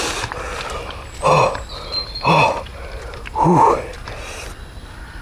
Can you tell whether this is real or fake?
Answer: real